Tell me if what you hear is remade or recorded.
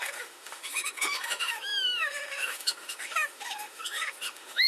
remade